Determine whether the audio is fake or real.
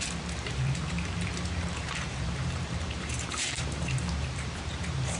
fake